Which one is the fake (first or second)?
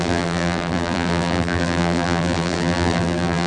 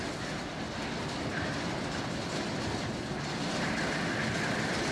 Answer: first